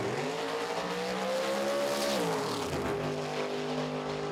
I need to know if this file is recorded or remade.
recorded